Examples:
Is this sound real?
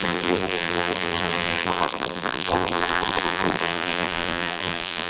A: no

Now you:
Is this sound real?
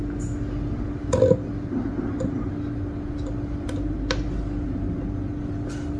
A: yes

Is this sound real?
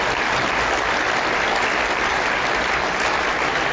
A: yes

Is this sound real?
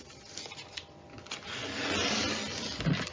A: yes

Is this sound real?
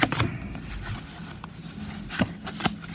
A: yes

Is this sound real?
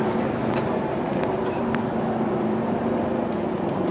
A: no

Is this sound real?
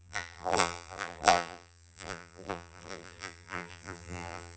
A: no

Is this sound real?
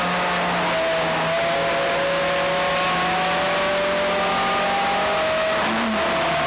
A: yes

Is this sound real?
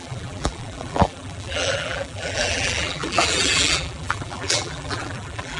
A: no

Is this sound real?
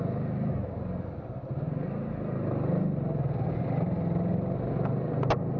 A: yes